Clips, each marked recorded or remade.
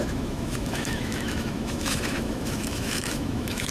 remade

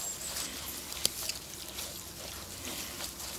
recorded